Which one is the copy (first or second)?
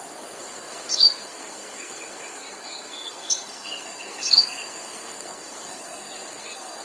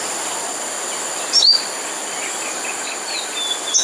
first